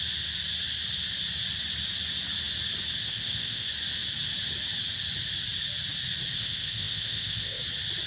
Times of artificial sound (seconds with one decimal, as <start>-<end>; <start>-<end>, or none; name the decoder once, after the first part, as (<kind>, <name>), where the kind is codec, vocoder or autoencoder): 3.0-3.7 (codec, ZipCodec); 6.3-7.6